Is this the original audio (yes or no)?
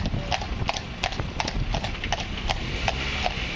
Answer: yes